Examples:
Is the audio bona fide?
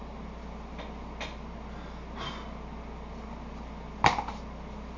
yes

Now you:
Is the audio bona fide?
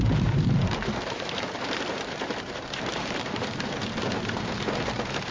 no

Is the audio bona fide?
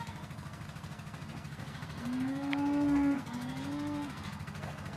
no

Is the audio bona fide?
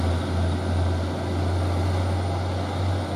yes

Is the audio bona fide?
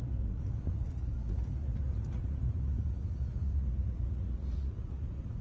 no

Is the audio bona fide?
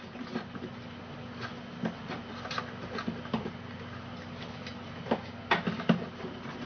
yes